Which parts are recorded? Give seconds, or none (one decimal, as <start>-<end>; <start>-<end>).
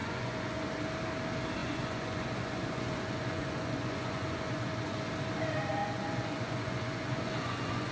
0.7-1.6; 5.1-5.8